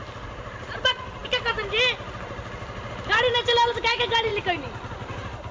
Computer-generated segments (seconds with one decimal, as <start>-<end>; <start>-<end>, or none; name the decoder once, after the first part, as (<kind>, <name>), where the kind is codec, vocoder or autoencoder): none